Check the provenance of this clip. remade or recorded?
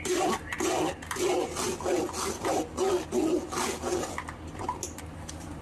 recorded